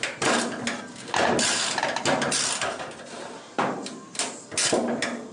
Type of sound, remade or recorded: recorded